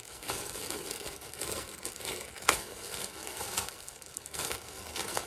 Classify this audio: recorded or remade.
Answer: remade